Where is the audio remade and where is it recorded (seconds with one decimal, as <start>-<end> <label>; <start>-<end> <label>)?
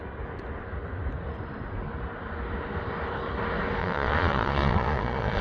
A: 0.0-3.8 recorded; 3.8-5.4 remade